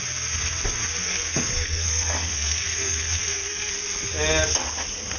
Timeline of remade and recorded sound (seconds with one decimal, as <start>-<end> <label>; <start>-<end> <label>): 0.0-1.0 recorded; 1.0-3.7 remade; 3.7-5.2 recorded

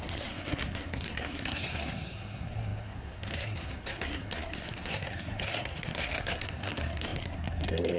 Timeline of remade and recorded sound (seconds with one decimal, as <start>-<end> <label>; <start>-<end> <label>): 0.0-8.0 remade

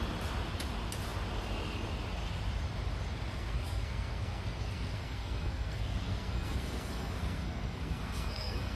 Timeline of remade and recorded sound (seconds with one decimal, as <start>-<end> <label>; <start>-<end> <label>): 0.0-3.3 recorded; 3.3-8.8 remade

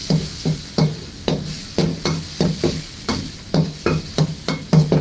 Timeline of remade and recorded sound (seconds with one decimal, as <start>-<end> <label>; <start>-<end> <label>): 0.0-5.0 recorded

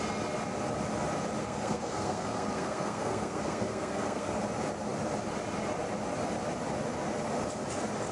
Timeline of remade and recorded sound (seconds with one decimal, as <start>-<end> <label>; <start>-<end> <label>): 0.0-1.4 recorded; 1.4-4.3 remade; 4.3-8.1 recorded

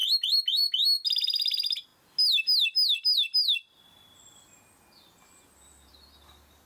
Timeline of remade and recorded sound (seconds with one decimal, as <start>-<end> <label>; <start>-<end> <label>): 0.0-6.7 recorded

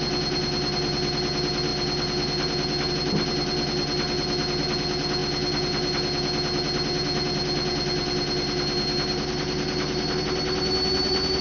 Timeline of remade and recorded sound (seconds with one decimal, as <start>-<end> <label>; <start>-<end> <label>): 0.0-11.4 recorded

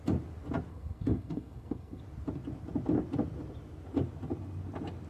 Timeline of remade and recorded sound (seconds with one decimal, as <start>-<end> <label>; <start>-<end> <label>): 0.0-0.7 recorded; 0.7-2.0 remade; 2.0-5.1 recorded